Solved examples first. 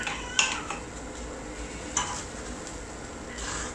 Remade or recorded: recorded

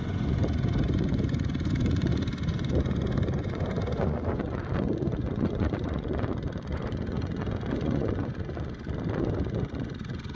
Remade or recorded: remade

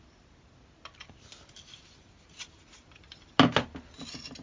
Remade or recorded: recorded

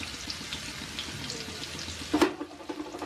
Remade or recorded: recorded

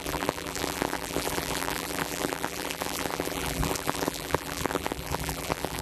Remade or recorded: remade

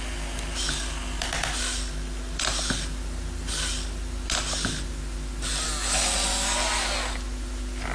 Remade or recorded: recorded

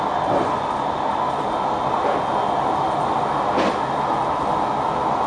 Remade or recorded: recorded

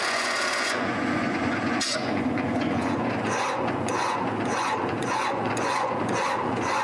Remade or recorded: remade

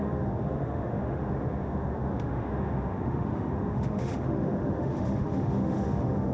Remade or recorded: remade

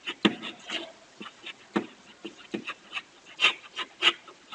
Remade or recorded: recorded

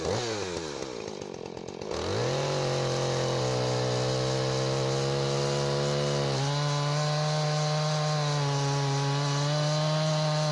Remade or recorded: recorded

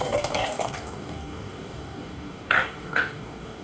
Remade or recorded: remade